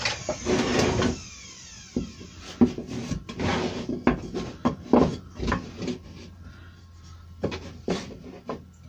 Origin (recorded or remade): recorded